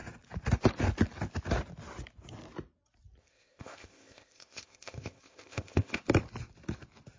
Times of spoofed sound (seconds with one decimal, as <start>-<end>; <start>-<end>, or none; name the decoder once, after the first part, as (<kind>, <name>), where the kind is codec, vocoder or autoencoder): 3.2-6.0 (codec, ZipCodec)